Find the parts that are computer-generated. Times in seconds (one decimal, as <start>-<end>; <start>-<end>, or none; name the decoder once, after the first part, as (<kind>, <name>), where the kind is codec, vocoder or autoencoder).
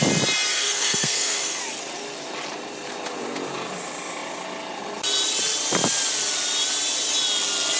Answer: 0.5-1.6 (codec, SNAC)